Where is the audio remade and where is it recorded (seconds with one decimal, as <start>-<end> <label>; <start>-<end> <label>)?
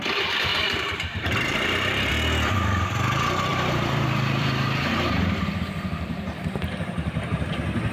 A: 0.0-0.5 recorded; 0.5-2.1 remade; 2.1-3.5 recorded; 3.5-7.2 remade; 7.2-7.9 recorded